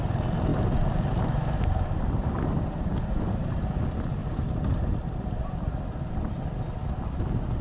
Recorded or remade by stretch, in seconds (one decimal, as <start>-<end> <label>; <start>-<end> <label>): 0.0-0.5 recorded; 0.5-3.8 remade; 3.8-4.2 recorded; 4.2-5.8 remade; 5.8-7.6 recorded